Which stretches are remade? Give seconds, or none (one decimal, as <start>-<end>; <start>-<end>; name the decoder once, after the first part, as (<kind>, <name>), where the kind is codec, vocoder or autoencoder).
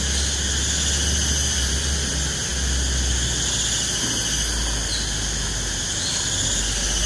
none